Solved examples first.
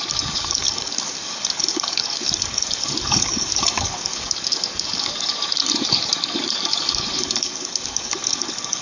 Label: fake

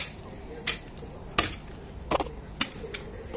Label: real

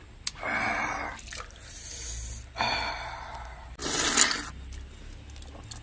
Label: real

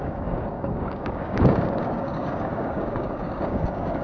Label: fake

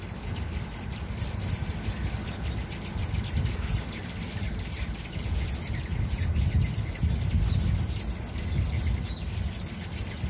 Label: real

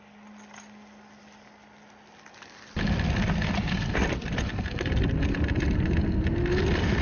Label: real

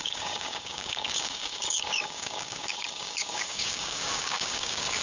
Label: fake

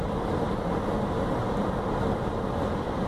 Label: real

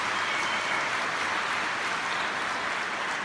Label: real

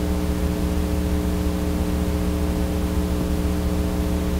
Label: real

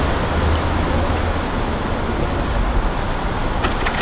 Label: real